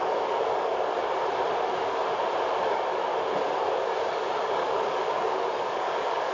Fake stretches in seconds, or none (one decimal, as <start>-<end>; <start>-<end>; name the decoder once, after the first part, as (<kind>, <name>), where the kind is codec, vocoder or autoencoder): 0.0-1.0 (codec, DAC); 1.6-2.0; 2.6-3.1; 4.1-6.3